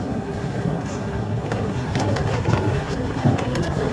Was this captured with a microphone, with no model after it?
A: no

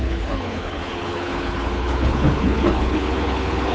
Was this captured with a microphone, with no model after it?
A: no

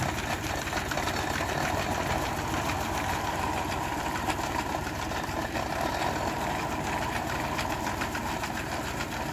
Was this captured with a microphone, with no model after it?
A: yes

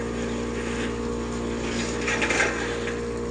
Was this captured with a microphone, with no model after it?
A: yes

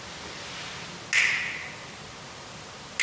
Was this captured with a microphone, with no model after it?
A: yes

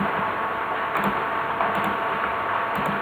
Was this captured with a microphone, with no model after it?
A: yes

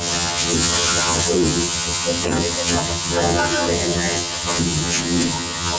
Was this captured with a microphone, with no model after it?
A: no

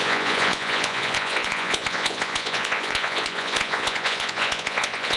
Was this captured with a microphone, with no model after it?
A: no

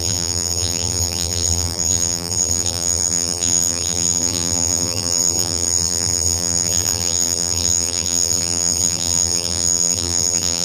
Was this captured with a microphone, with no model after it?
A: no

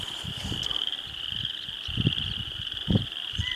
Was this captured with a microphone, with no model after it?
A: yes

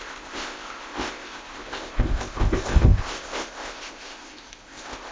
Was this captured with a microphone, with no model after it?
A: no